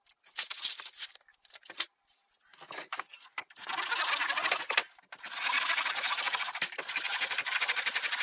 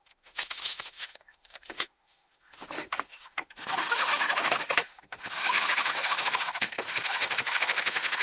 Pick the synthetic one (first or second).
second